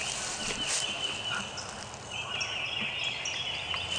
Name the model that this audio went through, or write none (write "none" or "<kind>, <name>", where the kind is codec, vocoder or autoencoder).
none